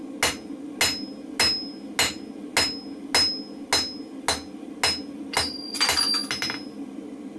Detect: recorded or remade recorded